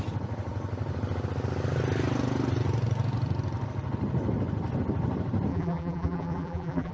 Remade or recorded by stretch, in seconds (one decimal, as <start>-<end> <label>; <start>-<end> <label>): 0.0-5.5 recorded; 5.5-6.9 remade